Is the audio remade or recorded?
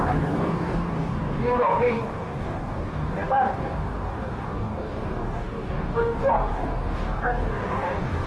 remade